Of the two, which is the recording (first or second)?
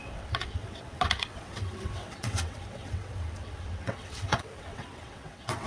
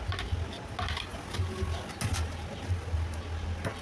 second